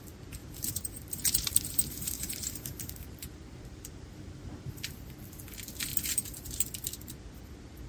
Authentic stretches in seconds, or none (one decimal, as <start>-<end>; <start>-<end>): 0.0-0.4; 5.0-7.9